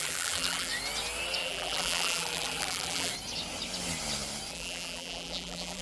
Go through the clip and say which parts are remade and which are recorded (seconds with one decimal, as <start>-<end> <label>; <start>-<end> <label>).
0.0-0.7 remade; 0.7-1.4 recorded; 1.4-3.1 remade; 3.1-4.5 recorded; 4.5-5.8 remade